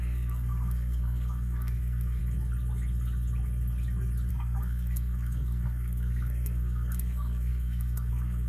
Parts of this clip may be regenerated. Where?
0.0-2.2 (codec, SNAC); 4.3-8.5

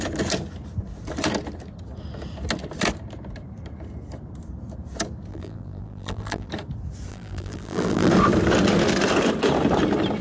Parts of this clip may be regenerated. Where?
5.3-6.5 (vocoder, BigVGAN v2); 7.1-8.1

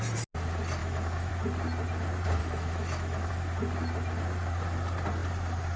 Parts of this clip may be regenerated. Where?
0.8-1.3 (autoencoder, DAC-VAE); 2.4-3.3